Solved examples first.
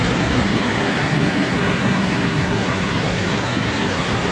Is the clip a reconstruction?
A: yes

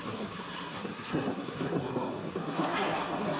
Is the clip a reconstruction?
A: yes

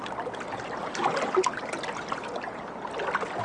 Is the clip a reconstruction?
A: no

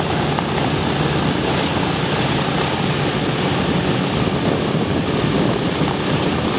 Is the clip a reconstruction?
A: no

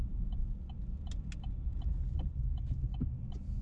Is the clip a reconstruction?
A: no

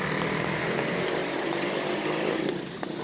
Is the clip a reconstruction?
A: yes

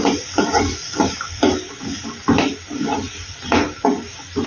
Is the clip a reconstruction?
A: no